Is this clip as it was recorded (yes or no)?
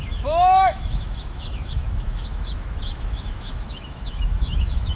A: no